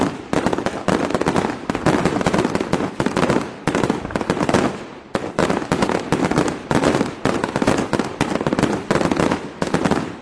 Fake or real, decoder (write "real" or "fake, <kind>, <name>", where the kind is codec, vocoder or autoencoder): real